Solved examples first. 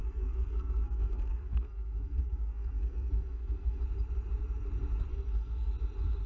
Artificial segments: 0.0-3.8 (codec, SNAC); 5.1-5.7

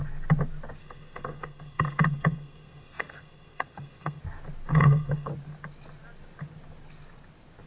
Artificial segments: 0.8-4.2 (codec, SNAC); 4.7-5.3

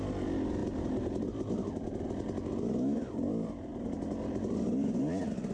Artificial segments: none

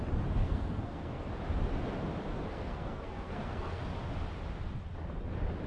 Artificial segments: 0.4-1.3 (codec, SNAC); 2.3-3.8

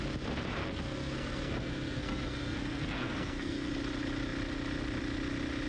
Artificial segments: 0.6-3.7 (codec, SNAC)

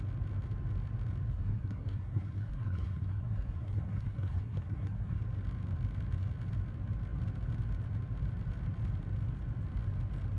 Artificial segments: 1.3-5.2 (codec, SNAC)

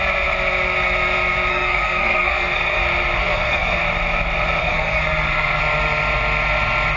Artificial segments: 1.5-2.8 (codec, SNAC); 3.2-3.8; 4.6-5.6

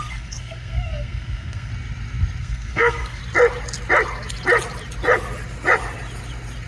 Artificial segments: 0.0-1.7 (codec, SNAC); 2.4-3.2